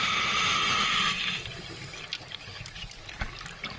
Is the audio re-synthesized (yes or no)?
no